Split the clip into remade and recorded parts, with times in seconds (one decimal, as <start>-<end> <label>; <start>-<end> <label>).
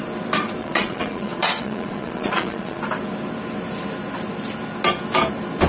0.0-0.6 recorded; 0.6-2.8 remade; 2.8-5.7 recorded